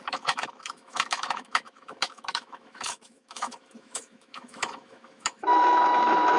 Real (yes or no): no